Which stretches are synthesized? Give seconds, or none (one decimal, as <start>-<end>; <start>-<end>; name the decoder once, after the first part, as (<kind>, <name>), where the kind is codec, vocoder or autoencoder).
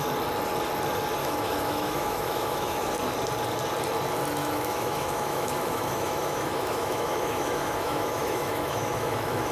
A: 1.2-2.9 (autoencoder, DAC-VAE); 4.4-9.5